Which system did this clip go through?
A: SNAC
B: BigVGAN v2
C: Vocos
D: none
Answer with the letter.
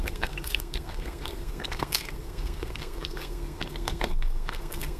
A